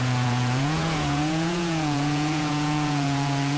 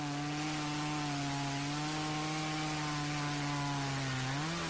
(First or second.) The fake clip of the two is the first